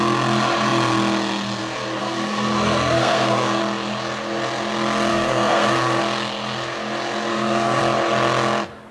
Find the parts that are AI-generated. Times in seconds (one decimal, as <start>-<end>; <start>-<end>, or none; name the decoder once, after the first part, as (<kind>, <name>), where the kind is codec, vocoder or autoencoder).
2.0-3.6 (codec, SNAC); 5.1-6.0; 7.3-7.8